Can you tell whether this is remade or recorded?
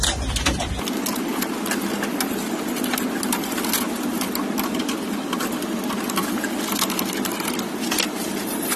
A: recorded